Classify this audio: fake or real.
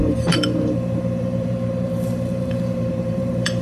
fake